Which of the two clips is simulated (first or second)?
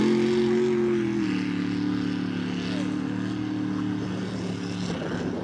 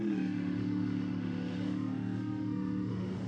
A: second